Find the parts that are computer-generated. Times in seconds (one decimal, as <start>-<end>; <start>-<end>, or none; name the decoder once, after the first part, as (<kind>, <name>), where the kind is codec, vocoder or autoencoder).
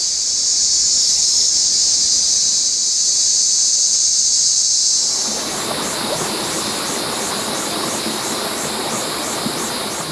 1.0-1.5 (codec, HILCodec)